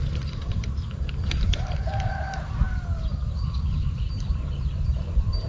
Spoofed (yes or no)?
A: yes